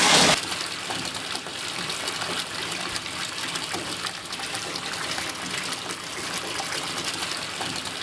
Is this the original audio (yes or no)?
yes